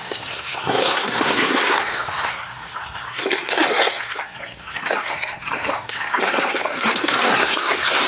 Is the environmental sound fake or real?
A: fake